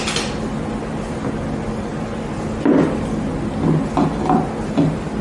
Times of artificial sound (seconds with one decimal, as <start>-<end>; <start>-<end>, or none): none